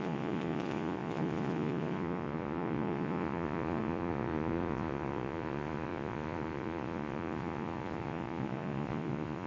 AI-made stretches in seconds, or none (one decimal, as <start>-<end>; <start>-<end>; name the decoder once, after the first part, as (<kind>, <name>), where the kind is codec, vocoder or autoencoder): 0.0-9.5 (vocoder, Vocos)